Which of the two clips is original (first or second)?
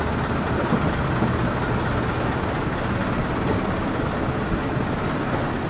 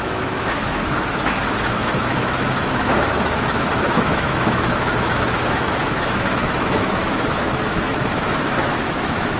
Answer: first